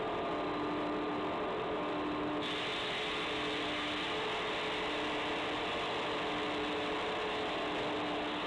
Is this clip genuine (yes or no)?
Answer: yes